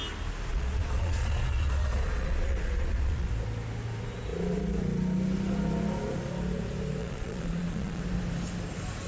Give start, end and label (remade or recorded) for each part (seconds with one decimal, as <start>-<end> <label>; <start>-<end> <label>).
0.0-0.5 recorded; 0.5-3.3 remade; 3.3-7.0 recorded; 7.0-8.0 remade; 8.0-9.1 recorded